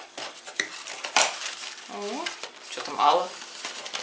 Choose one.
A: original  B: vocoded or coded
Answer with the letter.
B